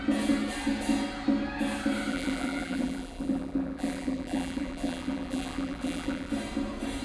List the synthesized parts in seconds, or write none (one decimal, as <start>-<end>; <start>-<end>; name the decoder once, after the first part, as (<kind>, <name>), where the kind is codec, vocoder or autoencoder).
2.1-6.3 (vocoder, BigVGAN v2)